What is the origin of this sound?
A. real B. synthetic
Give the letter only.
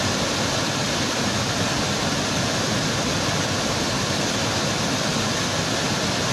A